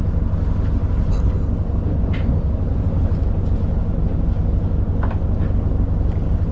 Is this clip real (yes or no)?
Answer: yes